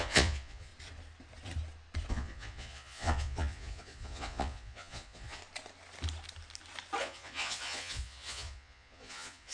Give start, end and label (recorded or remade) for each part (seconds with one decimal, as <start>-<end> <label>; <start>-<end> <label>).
0.0-0.7 remade; 0.7-2.1 recorded; 2.1-5.4 remade; 5.4-7.0 recorded; 7.0-9.5 remade